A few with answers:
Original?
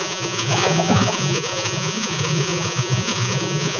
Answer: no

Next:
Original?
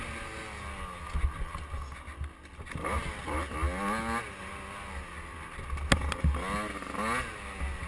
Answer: yes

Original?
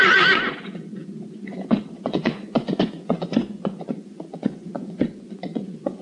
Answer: no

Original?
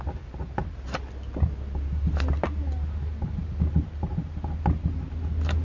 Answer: yes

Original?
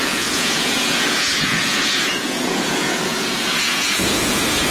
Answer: no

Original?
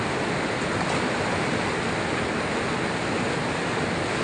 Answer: yes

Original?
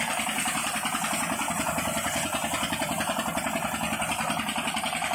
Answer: yes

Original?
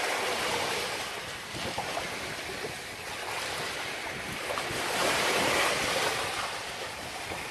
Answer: yes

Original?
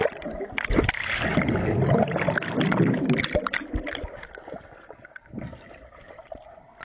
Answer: yes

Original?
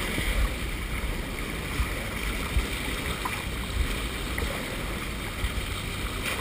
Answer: yes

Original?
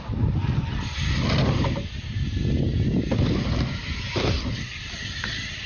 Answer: yes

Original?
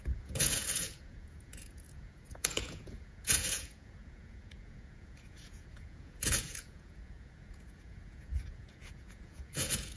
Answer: no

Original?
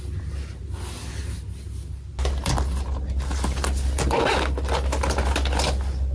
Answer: yes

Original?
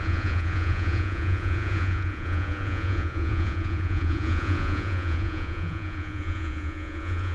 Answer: no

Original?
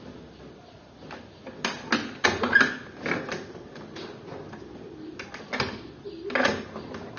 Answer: yes